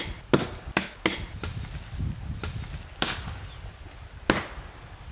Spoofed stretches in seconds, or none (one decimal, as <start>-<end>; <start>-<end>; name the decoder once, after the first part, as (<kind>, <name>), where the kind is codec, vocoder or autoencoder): none